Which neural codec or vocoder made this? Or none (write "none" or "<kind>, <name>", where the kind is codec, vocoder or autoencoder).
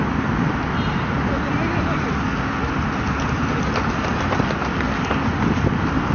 none